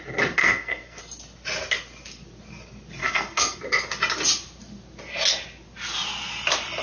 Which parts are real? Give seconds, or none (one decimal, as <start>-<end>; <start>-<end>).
0.0-0.4; 1.0-3.0; 3.6-6.8